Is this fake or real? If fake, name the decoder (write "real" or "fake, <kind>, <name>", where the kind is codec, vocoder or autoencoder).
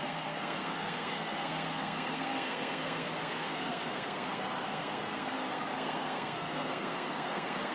fake, codec, SNAC